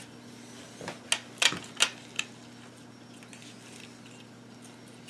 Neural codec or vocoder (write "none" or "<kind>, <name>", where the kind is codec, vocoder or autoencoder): none